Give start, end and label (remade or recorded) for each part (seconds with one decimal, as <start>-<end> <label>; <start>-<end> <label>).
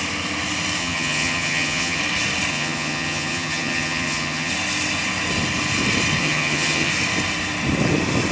0.0-0.8 recorded; 0.8-2.0 remade; 2.0-2.5 recorded; 2.5-4.5 remade; 4.5-6.2 recorded; 6.2-6.9 remade; 6.9-8.3 recorded